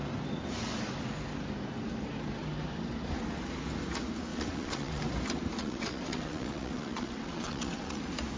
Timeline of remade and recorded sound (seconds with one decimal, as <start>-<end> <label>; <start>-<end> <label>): 0.0-4.3 recorded; 4.3-5.0 remade; 5.0-5.6 recorded; 5.6-8.0 remade; 8.0-8.4 recorded

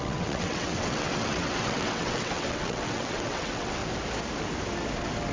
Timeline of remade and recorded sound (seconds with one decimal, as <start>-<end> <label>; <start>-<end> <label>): 0.0-3.8 remade; 3.8-5.3 recorded